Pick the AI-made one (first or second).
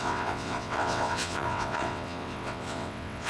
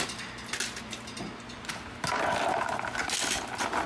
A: first